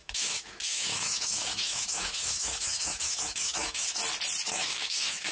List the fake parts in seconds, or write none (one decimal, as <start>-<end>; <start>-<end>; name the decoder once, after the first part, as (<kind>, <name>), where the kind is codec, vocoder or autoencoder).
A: 0.0-4.0 (autoencoder, DAC-VAE); 4.5-5.3